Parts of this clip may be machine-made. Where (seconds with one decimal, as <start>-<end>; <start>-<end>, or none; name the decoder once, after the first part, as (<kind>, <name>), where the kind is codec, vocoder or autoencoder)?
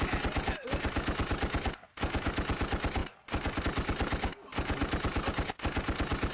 none